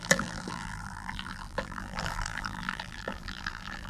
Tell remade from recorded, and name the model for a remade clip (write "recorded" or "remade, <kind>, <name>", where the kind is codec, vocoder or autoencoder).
remade, vocoder, BigVGAN v2